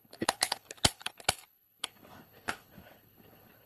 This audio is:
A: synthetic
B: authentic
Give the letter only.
A